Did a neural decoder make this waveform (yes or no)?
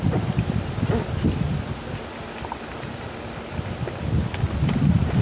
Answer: no